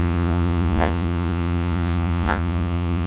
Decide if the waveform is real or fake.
fake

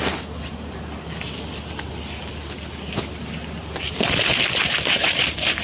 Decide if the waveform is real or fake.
real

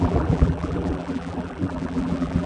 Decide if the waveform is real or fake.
fake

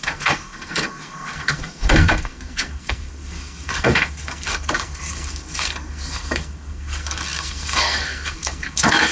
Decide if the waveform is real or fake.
fake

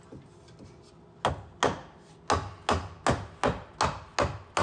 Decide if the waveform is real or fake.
real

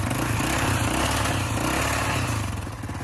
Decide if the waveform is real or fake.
real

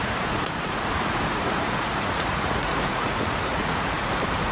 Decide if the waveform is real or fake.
fake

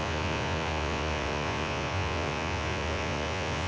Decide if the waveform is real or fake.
fake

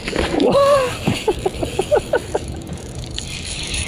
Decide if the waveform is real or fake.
fake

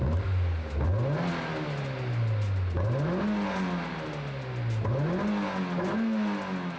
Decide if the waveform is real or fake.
real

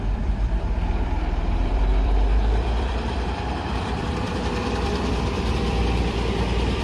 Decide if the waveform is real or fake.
fake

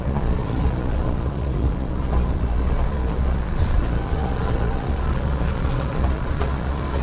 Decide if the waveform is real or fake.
fake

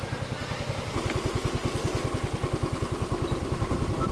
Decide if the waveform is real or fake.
real